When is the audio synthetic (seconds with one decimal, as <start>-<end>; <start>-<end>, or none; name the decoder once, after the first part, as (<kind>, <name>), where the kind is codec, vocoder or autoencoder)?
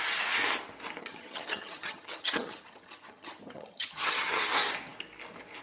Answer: 1.0-4.4 (vocoder, HiFi-GAN)